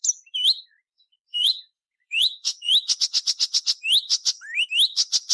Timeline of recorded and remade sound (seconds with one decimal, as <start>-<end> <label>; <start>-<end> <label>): 0.0-1.3 recorded; 1.3-2.7 remade; 2.7-5.3 recorded